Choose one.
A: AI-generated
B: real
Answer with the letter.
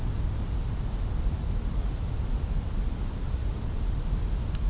B